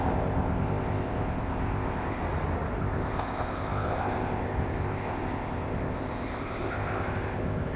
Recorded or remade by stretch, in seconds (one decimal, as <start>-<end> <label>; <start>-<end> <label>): 0.0-2.2 remade; 2.2-2.8 recorded; 2.8-7.8 remade